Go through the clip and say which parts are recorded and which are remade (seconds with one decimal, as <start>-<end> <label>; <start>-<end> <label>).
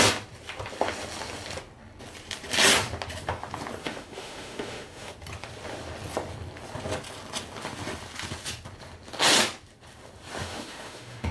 0.0-3.8 recorded; 3.8-5.1 remade; 5.1-10.4 recorded; 10.4-11.3 remade